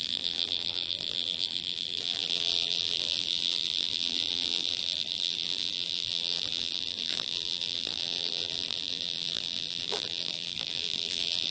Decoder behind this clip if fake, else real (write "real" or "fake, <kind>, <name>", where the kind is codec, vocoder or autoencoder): fake, vocoder, BigVGAN v2